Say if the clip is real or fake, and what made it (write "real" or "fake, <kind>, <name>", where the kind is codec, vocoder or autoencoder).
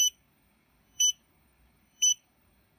fake, codec, DAC